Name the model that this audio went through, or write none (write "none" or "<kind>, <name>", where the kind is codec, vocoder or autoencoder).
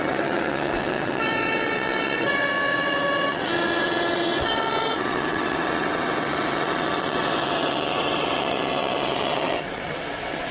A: vocoder, WaveNeXt